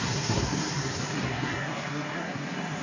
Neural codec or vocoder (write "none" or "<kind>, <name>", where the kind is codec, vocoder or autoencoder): codec, SNAC